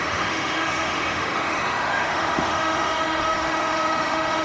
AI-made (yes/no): yes